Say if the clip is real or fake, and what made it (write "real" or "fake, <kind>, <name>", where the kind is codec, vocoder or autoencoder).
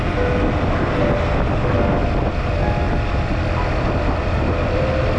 real